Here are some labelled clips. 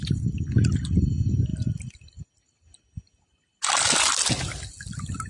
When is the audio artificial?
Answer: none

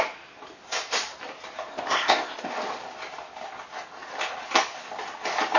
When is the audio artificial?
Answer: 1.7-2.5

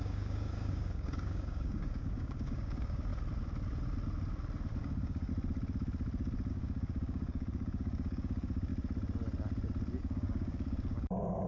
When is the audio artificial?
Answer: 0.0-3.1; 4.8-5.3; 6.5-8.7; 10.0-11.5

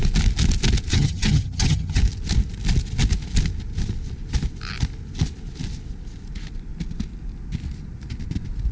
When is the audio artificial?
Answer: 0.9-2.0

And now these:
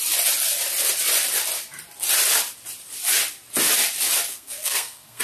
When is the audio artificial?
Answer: 4.3-5.2